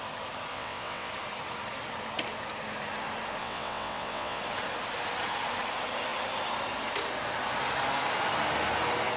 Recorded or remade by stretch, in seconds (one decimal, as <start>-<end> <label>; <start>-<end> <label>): 0.0-0.5 recorded; 0.5-1.1 remade; 1.1-3.4 recorded; 3.4-4.4 remade; 4.4-9.2 recorded